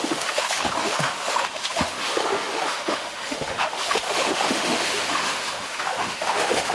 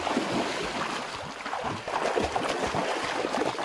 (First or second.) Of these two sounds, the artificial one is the first